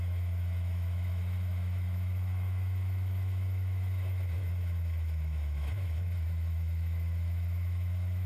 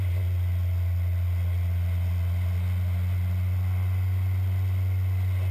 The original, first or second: second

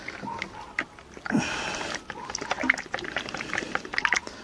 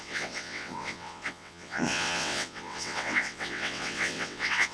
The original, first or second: first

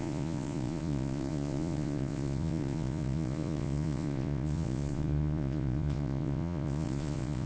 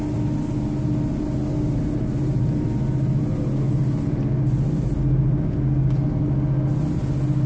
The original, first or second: second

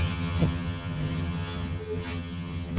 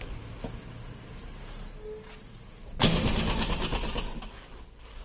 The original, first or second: second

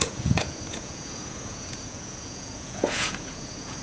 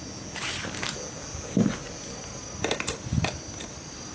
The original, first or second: second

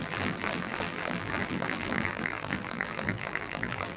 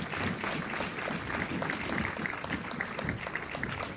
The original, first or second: second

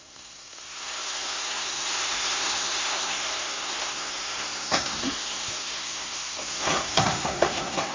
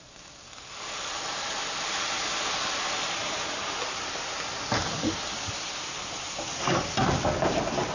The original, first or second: second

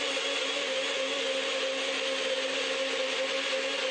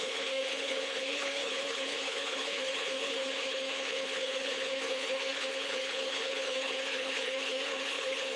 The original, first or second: first